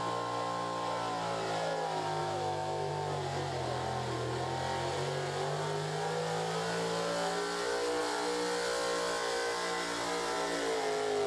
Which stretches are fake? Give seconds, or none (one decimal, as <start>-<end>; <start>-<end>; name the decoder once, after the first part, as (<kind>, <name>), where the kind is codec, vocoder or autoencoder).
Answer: 2.2-2.9 (autoencoder, DAC-VAE)